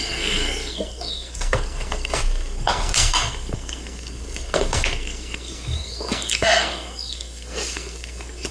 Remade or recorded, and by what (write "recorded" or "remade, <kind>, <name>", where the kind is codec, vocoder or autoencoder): remade, codec, SNAC